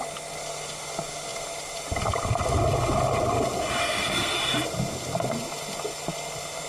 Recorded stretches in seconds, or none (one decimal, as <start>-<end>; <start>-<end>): 0.0-3.8; 4.4-6.7